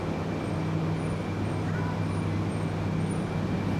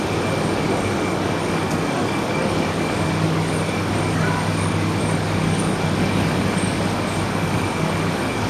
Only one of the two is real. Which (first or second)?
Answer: first